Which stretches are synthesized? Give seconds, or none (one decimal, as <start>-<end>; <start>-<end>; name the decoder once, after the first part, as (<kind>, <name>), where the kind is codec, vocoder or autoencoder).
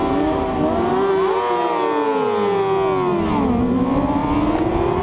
none